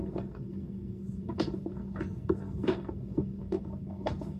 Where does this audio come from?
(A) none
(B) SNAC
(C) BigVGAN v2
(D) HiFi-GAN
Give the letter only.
B